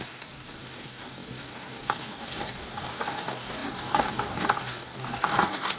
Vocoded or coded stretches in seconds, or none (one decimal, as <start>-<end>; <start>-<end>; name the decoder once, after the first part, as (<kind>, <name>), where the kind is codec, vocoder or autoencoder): 0.0-5.8 (codec, DAC)

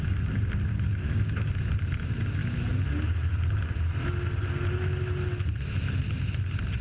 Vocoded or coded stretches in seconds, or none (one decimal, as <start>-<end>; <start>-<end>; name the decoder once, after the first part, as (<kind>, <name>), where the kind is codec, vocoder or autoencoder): 0.7-1.5 (codec, DAC)